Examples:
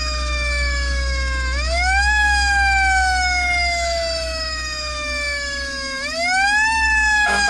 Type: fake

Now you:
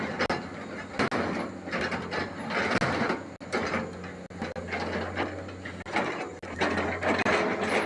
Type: real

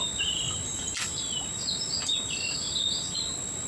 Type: real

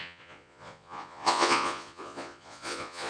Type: fake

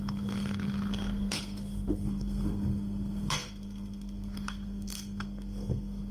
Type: fake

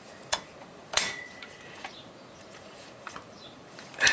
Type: fake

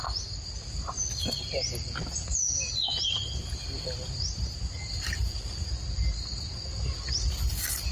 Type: real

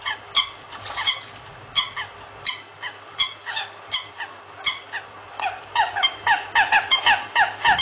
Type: real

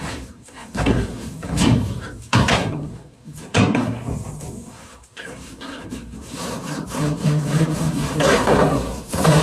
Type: fake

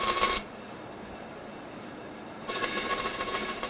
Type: fake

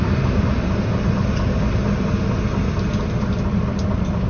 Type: real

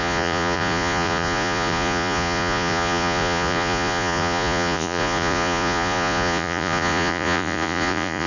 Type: fake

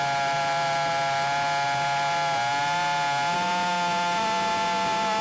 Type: real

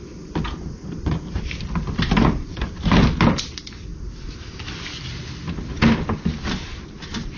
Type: real